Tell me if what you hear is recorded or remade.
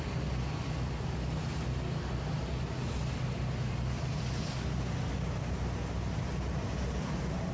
recorded